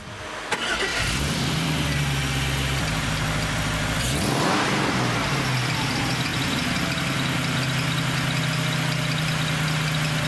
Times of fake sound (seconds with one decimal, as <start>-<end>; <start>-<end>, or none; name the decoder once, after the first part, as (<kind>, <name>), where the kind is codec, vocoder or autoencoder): 0.9-4.7 (vocoder, BigVGAN v2); 6.3-6.8